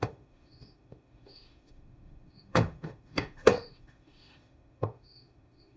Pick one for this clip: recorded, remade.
remade